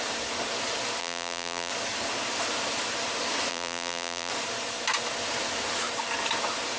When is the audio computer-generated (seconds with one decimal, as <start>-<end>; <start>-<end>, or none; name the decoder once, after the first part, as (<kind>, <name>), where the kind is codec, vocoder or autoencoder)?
1.0-1.7 (vocoder, BigVGAN v2); 3.5-4.3